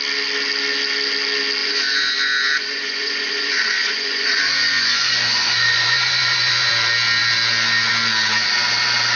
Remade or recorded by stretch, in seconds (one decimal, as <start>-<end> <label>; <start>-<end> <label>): 0.0-1.6 recorded; 1.6-6.7 remade; 6.7-9.2 recorded

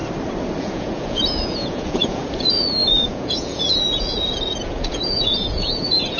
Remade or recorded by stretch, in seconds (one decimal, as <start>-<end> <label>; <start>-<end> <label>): 0.0-0.6 recorded; 0.6-6.2 remade

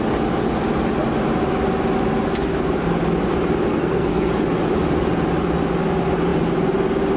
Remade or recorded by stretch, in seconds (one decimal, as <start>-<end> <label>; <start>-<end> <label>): 0.0-3.7 recorded; 3.7-4.3 remade; 4.3-7.2 recorded